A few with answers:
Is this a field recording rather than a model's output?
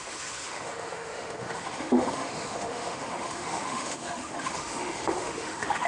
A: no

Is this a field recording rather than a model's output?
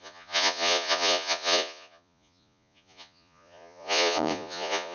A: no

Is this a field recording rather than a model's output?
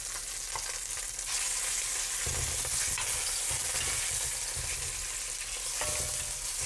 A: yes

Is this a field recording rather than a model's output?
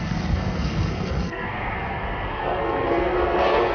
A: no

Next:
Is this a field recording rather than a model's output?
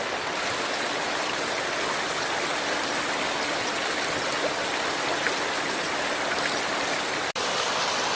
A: yes